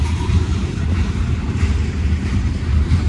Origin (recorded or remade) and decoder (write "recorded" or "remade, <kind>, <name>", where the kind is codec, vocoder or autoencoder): remade, vocoder, BigVGAN v2